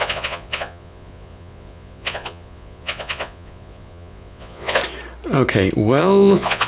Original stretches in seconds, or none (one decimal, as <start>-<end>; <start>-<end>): 4.8-6.0